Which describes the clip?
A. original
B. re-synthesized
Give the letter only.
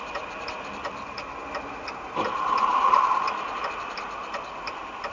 B